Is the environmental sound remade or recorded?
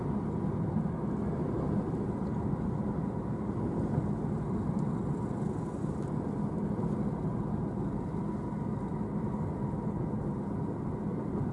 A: recorded